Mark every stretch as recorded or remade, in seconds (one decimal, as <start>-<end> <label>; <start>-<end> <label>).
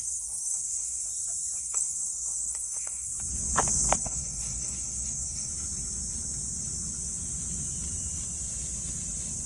0.0-1.0 remade; 1.0-1.6 recorded; 1.6-3.1 remade; 3.1-4.0 recorded; 4.0-5.5 remade; 5.5-9.5 recorded